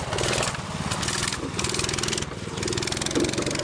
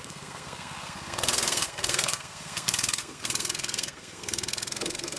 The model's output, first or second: second